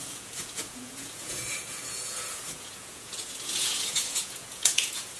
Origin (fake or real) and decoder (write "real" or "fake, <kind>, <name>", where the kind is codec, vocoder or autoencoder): fake, vocoder, Vocos